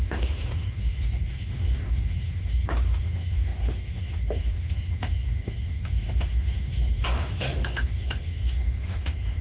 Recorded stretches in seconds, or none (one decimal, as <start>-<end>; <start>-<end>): none